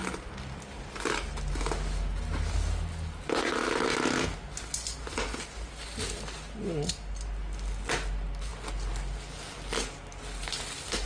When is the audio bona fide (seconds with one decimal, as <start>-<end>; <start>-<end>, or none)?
0.0-11.1